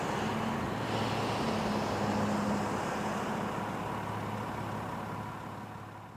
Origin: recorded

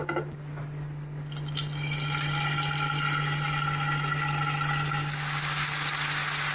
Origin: recorded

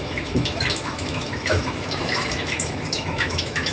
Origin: remade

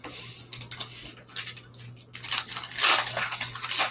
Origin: recorded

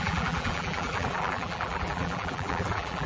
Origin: remade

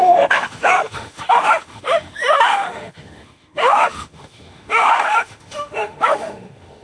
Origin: remade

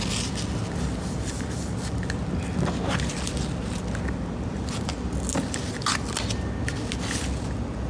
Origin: recorded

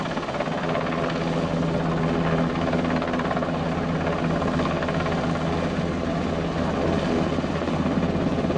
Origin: recorded